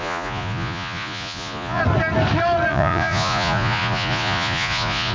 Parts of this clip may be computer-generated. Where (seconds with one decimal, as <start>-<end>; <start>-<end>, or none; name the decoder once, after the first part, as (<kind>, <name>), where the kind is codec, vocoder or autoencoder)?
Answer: 0.0-1.8 (vocoder, Vocos); 2.7-5.1